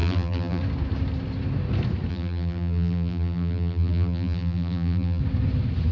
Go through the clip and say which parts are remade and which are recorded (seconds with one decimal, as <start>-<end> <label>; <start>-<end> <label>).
0.0-0.6 remade; 0.6-2.1 recorded; 2.1-5.2 remade; 5.2-5.9 recorded